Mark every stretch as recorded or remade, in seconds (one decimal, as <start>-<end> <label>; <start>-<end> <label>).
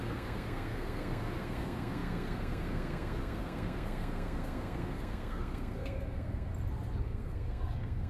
0.0-6.5 remade; 6.5-7.0 recorded; 7.0-8.1 remade